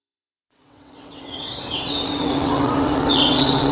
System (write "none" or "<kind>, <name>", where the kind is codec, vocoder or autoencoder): vocoder, WaveNeXt